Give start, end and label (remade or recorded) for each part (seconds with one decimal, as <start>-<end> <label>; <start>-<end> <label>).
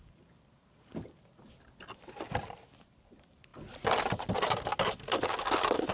0.0-5.9 recorded